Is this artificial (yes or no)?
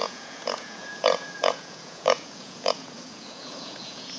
yes